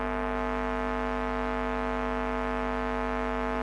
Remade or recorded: recorded